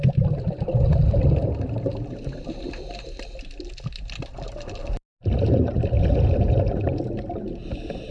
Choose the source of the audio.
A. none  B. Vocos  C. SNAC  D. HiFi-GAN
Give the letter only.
A